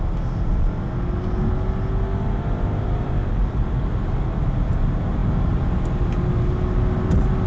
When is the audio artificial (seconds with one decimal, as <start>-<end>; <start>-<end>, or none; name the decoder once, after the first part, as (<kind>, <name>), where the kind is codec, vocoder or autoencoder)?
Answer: none